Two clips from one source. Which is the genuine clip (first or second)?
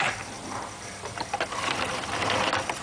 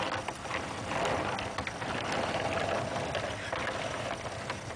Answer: second